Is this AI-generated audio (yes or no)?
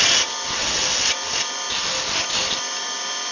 no